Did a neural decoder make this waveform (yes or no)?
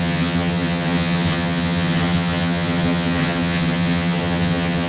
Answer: yes